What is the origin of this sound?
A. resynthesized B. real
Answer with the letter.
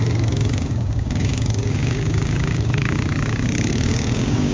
A